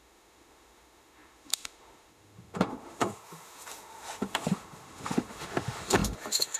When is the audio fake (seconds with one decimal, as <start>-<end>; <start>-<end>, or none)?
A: 0.0-6.6